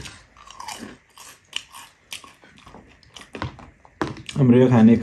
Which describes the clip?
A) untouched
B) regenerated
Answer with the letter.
A